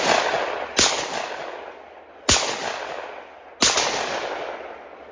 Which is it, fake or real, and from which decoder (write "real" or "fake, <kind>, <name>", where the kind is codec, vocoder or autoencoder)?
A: real